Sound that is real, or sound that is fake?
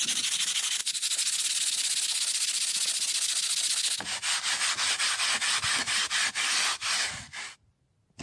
real